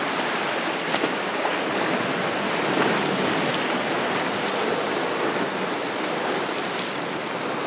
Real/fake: real